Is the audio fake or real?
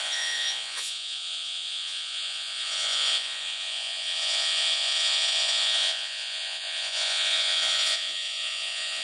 fake